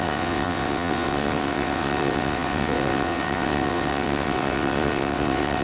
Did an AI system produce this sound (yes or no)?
yes